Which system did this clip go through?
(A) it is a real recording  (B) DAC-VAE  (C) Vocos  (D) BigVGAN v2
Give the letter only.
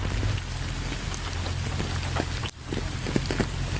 A